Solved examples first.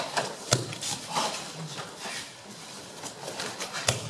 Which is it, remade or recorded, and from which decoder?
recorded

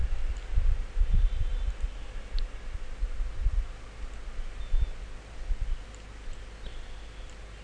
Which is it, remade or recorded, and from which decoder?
recorded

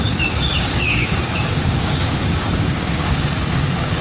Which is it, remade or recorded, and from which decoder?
remade, codec, DAC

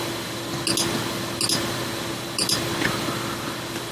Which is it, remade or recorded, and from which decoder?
recorded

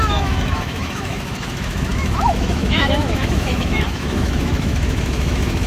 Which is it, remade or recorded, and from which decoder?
remade, autoencoder, DAC-VAE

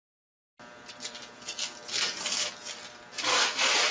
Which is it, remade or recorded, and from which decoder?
recorded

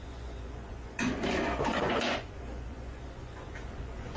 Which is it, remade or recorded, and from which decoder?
remade, vocoder, Vocos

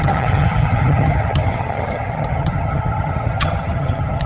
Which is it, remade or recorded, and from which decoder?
remade, vocoder, HiFi-GAN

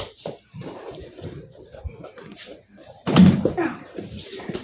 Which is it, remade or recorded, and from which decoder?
remade, vocoder, BigVGAN v2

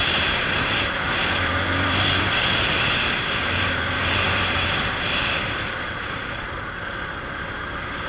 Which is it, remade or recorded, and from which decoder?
remade, vocoder, BigVGAN v2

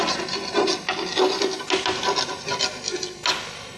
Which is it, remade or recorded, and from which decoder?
recorded